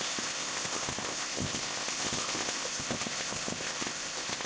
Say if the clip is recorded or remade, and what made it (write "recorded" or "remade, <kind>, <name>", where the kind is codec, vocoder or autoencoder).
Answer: remade, codec, ZipCodec